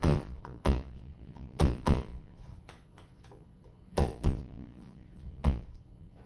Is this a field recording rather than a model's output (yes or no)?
no